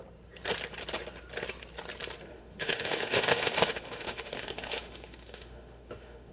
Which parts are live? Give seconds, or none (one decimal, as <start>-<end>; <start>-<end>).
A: 0.0-2.3